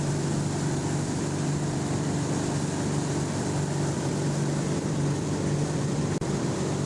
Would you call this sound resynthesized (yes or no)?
yes